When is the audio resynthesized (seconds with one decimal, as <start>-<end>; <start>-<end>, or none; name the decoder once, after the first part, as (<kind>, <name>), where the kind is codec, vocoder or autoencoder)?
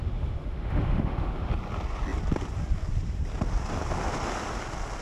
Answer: 0.0-1.5 (autoencoder, DAC-VAE)